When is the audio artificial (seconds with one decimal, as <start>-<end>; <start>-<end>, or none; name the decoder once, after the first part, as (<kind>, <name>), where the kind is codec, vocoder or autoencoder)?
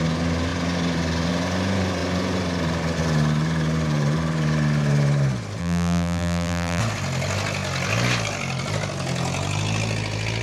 5.6-6.8 (vocoder, BigVGAN v2)